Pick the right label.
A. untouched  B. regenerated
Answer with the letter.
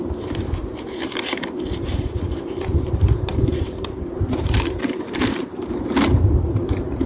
B